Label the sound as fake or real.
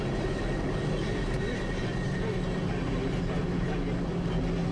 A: real